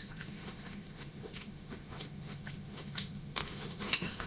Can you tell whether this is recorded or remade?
remade